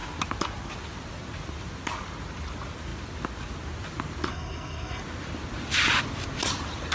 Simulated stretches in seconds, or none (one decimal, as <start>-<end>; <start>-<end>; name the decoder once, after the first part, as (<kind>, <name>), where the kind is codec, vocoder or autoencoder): 4.3-5.0 (codec, SNAC)